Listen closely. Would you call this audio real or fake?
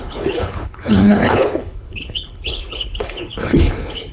fake